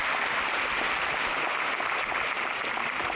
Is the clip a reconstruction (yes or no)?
no